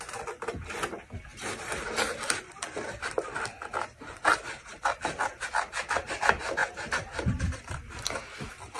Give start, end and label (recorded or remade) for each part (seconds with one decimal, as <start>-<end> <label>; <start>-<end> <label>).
0.0-1.3 recorded; 1.3-1.8 remade; 1.8-6.6 recorded; 6.6-7.7 remade; 7.7-8.8 recorded